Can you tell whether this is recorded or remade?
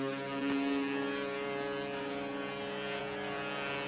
recorded